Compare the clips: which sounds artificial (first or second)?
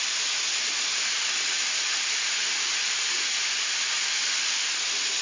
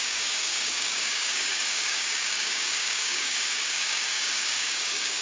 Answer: second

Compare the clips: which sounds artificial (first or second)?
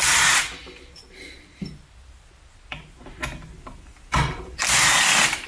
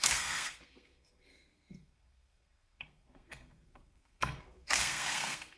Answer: second